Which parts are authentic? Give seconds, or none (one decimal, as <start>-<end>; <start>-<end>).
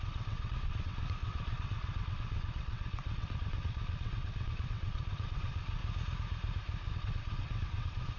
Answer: 5.8-6.9